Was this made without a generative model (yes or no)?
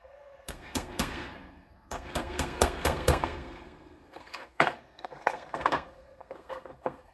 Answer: no